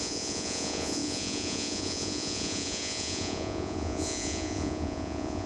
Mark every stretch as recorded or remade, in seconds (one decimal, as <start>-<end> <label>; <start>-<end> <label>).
0.0-5.5 remade